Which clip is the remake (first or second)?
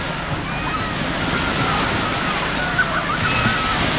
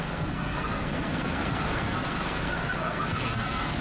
second